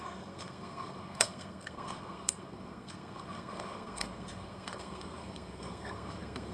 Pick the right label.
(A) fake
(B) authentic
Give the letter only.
A